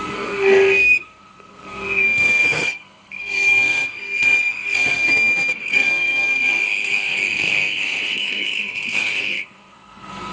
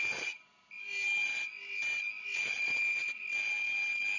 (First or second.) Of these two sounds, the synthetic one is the first